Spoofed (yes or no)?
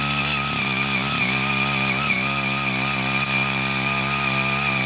no